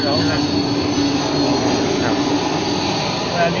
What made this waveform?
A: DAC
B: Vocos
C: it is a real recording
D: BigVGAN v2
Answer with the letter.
C